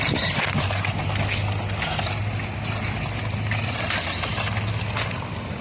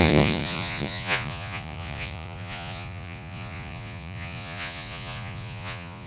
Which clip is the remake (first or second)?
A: second